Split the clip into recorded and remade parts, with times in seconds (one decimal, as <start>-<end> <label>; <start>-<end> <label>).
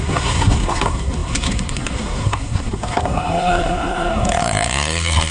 0.0-5.3 remade